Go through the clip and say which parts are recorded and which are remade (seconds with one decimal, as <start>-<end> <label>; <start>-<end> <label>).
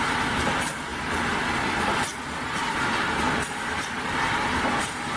0.0-5.2 recorded